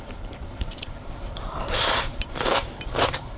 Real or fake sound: fake